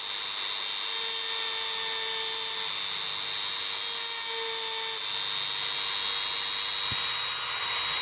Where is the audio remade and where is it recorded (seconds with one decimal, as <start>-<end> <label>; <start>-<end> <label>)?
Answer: 0.0-8.0 recorded